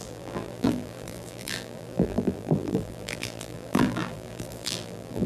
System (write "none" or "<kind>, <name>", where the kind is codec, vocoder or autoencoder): vocoder, BigVGAN v2